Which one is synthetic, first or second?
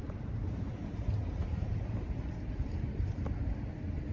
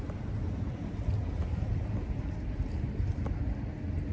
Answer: first